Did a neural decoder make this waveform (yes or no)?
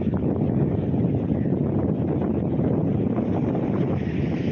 no